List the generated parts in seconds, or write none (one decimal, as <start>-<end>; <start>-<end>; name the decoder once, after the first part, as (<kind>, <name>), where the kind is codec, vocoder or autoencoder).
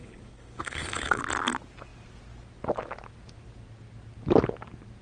0.0-1.2 (codec, HILCodec)